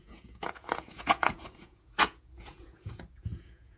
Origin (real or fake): fake